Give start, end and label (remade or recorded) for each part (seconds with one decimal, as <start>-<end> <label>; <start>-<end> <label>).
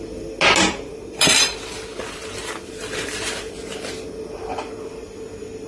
0.0-0.9 recorded; 0.9-3.5 remade; 3.5-5.7 recorded